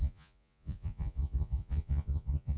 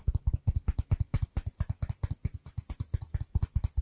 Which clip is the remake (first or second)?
first